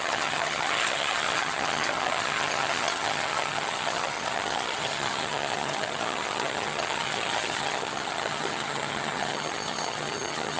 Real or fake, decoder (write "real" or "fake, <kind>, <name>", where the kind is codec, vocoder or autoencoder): fake, vocoder, HiFi-GAN